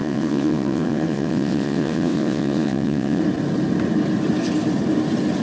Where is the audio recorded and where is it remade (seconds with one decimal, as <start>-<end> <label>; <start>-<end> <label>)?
0.0-3.2 remade; 3.2-5.4 recorded

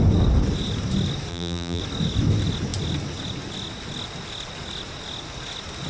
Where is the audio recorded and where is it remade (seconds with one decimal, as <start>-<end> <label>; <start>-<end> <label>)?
0.0-1.3 recorded; 1.3-1.8 remade; 1.8-5.9 recorded

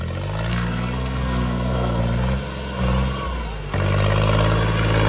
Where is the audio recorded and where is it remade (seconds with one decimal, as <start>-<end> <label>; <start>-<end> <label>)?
0.0-0.5 recorded; 0.5-2.0 remade; 2.0-5.1 recorded

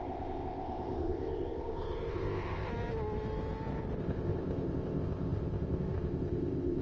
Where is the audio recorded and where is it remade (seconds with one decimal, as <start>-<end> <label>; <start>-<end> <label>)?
0.0-2.7 remade; 2.7-4.0 recorded; 4.0-6.8 remade

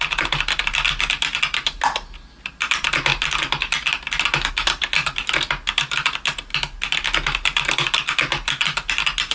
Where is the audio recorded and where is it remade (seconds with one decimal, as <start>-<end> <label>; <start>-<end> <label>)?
0.0-9.3 recorded

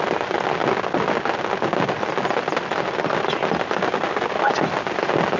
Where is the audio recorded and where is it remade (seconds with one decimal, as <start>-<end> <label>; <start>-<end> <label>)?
0.0-5.4 recorded